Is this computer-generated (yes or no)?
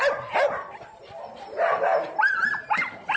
no